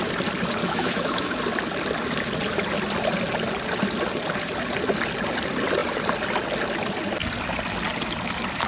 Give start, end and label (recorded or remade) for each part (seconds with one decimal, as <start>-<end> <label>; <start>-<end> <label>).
0.0-0.6 recorded; 0.6-1.4 remade; 1.4-8.7 recorded